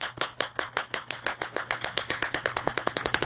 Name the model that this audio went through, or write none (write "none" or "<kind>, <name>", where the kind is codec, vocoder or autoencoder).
codec, HILCodec